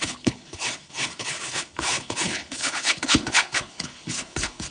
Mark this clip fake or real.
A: fake